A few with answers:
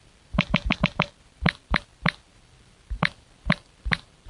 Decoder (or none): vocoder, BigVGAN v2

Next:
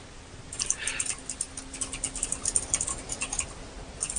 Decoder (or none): none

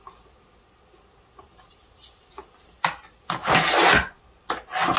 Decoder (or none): none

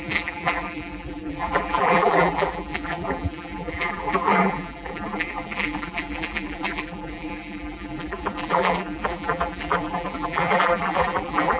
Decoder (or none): vocoder, BigVGAN v2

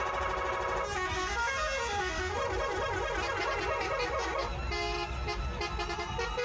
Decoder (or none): none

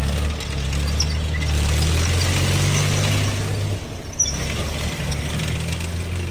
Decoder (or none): none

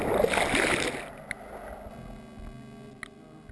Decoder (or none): none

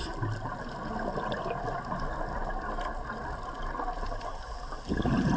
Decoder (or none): none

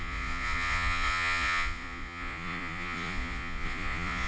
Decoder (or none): vocoder, Vocos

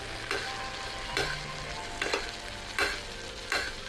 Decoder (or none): none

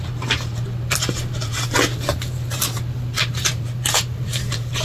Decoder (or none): vocoder, BigVGAN v2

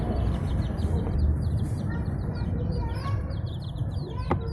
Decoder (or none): vocoder, BigVGAN v2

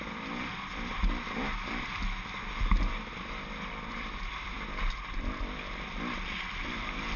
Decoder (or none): vocoder, BigVGAN v2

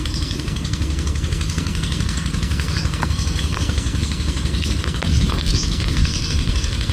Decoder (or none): codec, SNAC